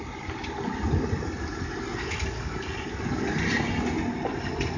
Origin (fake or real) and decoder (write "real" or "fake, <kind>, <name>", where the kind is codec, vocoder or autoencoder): real